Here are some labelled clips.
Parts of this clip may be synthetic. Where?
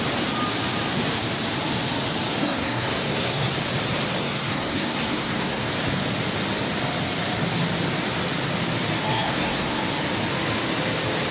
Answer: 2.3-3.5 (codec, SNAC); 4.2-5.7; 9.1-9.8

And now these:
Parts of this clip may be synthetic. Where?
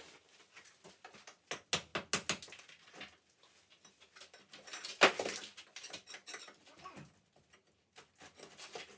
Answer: none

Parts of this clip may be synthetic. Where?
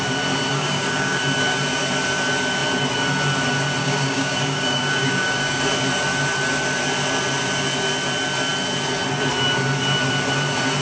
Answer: 0.5-1.2 (codec, DAC); 3.8-5.6